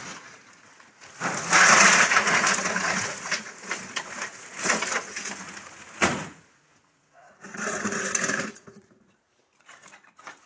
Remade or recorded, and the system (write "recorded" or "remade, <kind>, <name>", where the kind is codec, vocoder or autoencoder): remade, vocoder, Vocos